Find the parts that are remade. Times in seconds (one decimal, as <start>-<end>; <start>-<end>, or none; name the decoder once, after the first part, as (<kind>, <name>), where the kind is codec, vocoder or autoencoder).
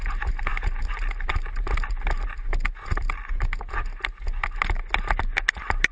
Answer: none